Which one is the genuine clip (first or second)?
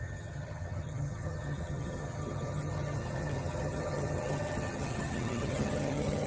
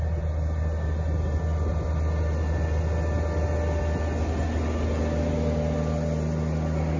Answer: second